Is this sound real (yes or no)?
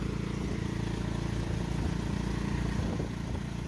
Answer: yes